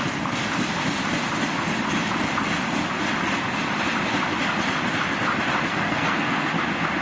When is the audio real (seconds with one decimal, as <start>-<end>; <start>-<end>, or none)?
0.0-5.7; 6.5-7.0